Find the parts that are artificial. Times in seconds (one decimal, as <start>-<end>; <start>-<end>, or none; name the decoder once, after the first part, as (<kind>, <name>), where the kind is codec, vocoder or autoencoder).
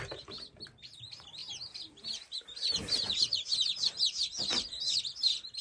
none